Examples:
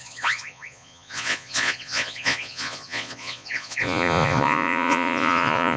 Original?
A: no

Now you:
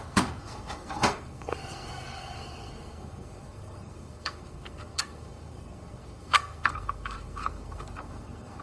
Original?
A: no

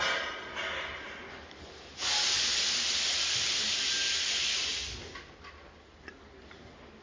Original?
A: yes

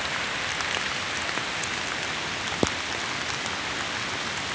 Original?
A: yes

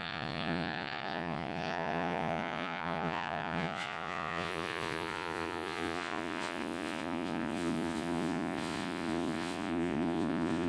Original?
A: no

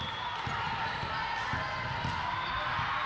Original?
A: yes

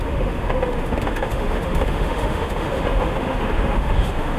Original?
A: no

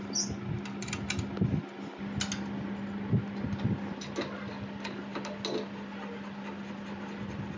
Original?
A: yes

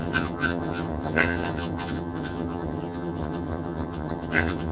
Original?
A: no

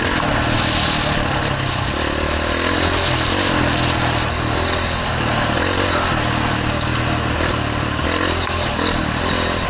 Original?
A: yes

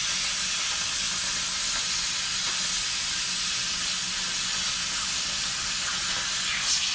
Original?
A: yes